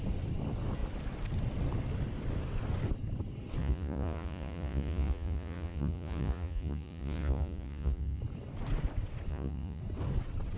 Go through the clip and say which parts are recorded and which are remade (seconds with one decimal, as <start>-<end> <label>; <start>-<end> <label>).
0.0-3.6 recorded; 3.6-8.2 remade; 8.2-9.3 recorded; 9.3-9.8 remade; 9.8-10.6 recorded